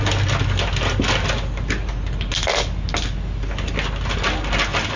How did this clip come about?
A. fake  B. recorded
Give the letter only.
B